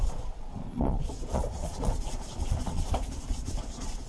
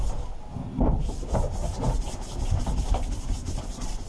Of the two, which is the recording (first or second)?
second